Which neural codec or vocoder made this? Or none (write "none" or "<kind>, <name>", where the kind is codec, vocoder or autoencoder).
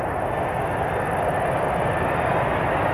none